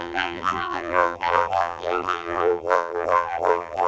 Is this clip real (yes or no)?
no